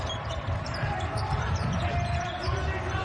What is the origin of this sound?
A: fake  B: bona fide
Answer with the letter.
B